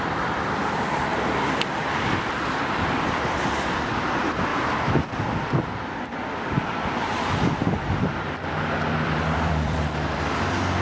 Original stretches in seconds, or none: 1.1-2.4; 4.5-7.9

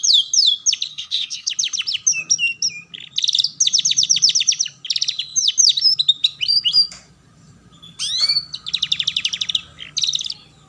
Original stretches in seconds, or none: 0.0-0.9; 1.5-10.7

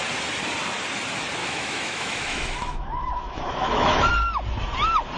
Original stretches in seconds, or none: 0.0-1.4; 4.1-5.2

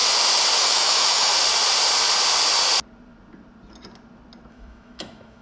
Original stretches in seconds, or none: 0.0-0.6; 1.3-4.5